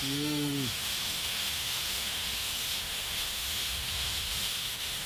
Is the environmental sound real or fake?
fake